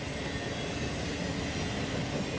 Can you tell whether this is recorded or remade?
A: recorded